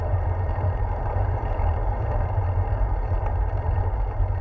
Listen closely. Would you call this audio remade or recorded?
remade